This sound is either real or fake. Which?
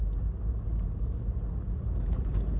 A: real